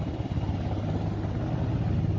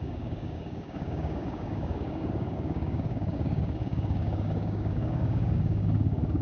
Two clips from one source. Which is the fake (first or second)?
second